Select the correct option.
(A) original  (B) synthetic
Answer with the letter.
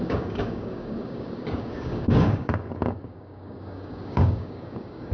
B